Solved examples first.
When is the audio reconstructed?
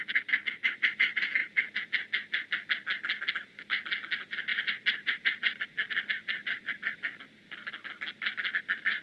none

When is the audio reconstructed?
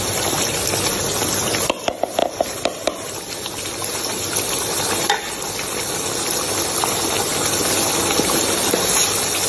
none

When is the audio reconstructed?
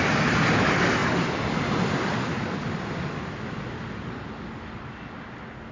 none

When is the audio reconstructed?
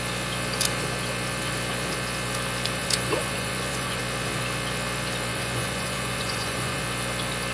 2.8-4.0; 5.3-6.8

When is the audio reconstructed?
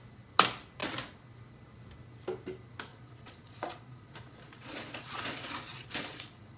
2.9-6.6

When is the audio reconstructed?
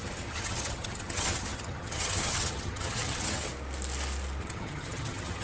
0.0-3.5; 4.4-5.4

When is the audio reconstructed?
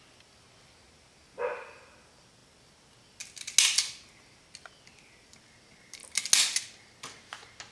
none